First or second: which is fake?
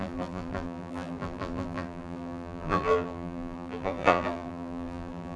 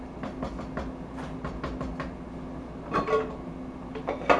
first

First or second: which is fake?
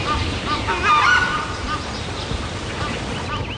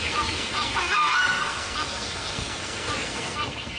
second